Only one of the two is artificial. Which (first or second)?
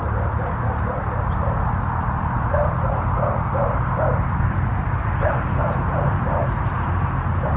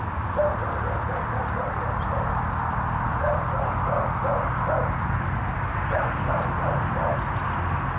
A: first